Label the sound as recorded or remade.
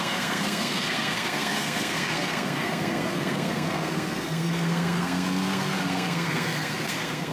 remade